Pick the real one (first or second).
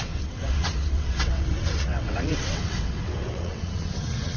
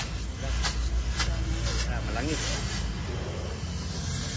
second